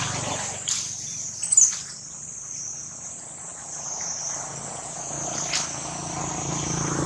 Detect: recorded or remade recorded